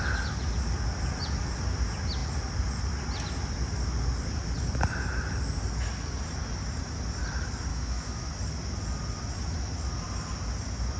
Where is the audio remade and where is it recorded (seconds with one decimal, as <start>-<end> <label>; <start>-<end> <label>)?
0.0-7.7 recorded; 7.7-8.3 remade; 8.3-11.0 recorded